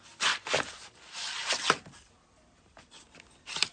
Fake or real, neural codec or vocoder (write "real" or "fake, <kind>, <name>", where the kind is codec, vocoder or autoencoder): real